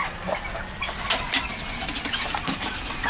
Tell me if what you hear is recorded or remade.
recorded